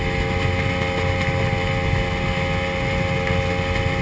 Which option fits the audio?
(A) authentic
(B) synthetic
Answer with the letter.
A